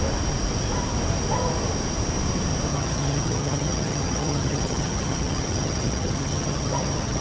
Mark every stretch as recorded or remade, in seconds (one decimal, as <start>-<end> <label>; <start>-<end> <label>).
0.0-2.7 recorded; 2.7-7.2 remade